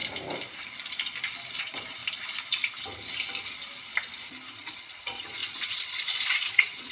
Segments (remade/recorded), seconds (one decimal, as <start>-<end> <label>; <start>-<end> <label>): 0.0-1.6 recorded; 1.6-2.0 remade; 2.0-4.6 recorded; 4.6-6.9 remade